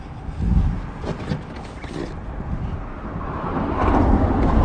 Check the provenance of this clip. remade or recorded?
recorded